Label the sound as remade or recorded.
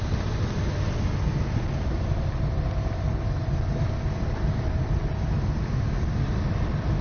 recorded